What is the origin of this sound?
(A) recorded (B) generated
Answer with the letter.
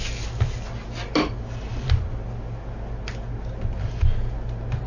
A